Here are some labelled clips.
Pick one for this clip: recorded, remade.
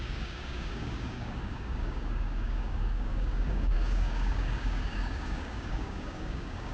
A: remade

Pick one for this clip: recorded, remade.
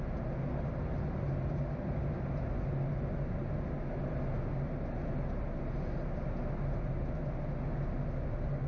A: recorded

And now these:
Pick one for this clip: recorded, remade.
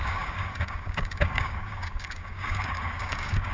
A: remade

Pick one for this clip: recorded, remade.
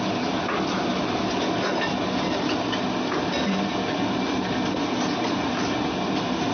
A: recorded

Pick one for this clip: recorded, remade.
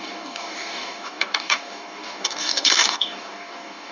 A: remade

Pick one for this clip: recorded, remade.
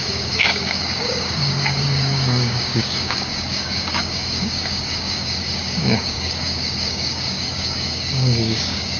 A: remade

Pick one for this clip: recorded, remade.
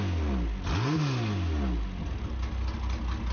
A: recorded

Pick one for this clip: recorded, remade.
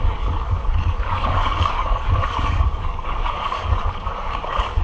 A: remade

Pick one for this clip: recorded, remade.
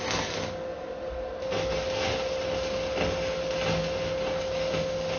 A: recorded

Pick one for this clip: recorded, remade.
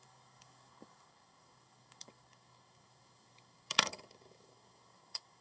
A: remade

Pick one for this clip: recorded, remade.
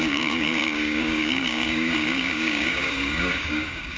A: remade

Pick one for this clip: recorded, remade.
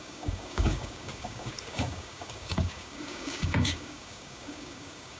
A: remade